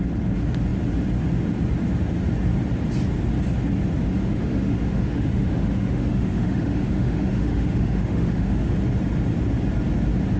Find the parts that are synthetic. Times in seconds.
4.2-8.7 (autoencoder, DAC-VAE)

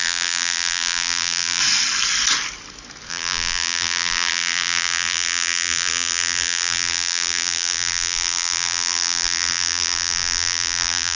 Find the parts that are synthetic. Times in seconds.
0.0-1.6 (vocoder, BigVGAN v2); 3.1-11.1